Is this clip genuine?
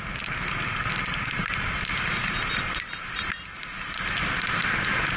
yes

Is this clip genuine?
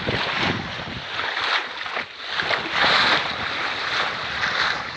yes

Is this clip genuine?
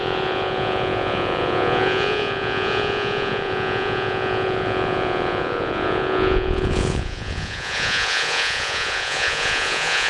no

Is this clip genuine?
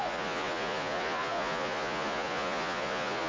no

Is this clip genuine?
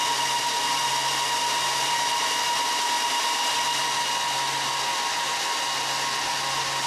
yes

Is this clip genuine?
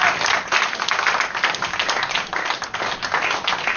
yes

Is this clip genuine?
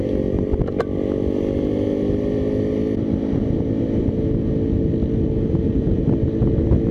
yes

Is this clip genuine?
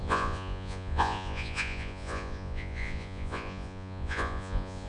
no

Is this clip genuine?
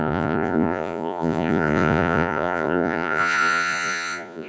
no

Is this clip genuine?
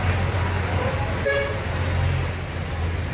yes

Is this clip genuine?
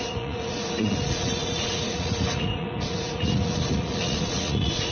no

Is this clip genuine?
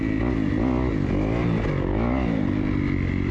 yes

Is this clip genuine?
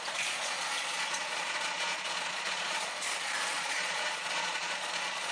no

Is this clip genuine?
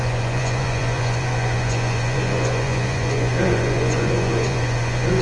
no